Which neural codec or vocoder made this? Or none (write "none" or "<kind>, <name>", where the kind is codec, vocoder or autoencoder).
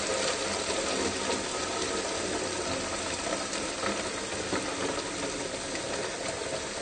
none